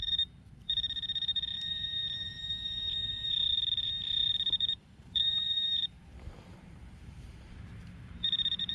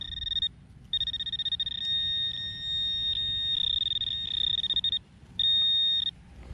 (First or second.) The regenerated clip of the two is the first